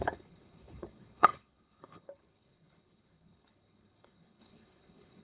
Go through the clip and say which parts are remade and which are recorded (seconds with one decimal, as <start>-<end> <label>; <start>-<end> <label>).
0.0-5.2 remade